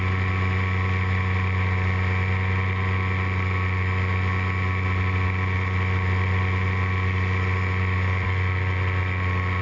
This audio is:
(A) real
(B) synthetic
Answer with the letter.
A